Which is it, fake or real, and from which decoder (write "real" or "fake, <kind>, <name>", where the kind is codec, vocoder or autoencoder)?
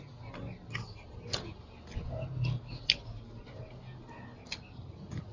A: real